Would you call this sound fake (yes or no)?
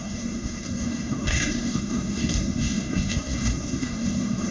yes